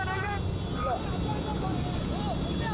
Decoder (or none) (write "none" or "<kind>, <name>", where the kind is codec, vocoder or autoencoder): none